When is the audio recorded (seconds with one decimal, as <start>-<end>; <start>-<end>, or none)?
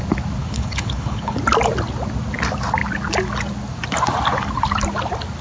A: 0.0-0.4; 1.4-5.4